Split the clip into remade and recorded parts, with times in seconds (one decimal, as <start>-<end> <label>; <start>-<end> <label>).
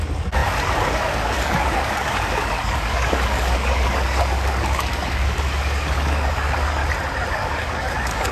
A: 0.0-6.8 remade; 6.8-7.3 recorded; 7.3-8.3 remade